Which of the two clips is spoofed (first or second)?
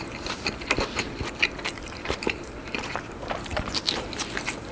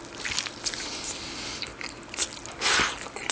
first